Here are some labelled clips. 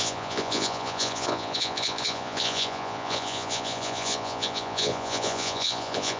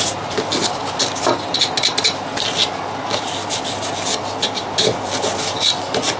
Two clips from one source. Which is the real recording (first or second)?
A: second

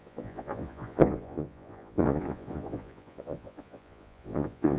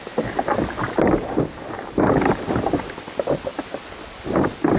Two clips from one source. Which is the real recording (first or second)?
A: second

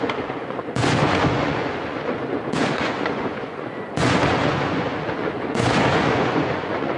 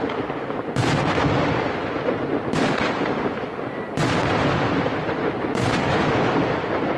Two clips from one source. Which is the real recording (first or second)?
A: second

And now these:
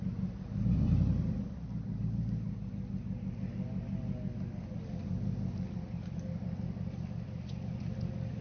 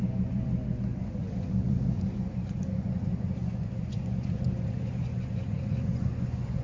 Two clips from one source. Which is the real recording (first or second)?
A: first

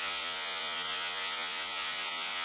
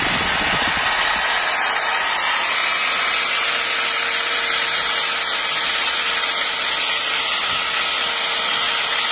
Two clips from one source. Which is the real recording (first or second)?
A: second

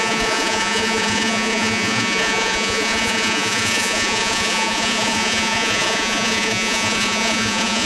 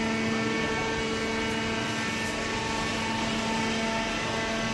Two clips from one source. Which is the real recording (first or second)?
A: second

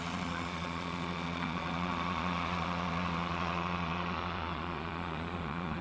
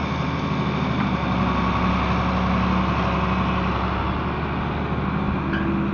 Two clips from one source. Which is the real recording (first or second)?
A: second